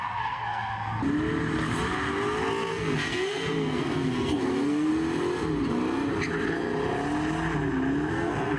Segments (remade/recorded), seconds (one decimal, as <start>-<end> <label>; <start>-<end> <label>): 0.0-1.0 remade; 1.0-2.7 recorded; 2.7-4.9 remade; 4.9-8.1 recorded; 8.1-8.6 remade